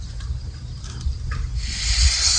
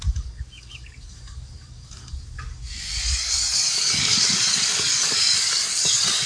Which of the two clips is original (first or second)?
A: first